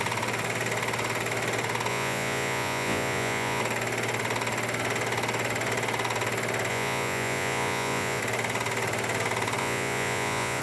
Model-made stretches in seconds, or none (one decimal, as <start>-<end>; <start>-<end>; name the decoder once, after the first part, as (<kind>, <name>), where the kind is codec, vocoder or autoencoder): 1.9-3.6 (vocoder, Vocos); 6.7-8.2; 9.6-10.6